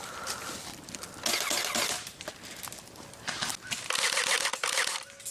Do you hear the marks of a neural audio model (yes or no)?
no